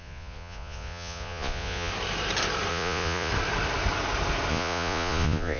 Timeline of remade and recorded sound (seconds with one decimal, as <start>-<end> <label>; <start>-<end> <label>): 0.0-1.9 remade; 1.9-2.7 recorded; 2.7-3.3 remade; 3.3-4.5 recorded; 4.5-5.6 remade